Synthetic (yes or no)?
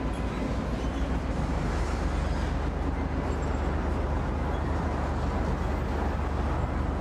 no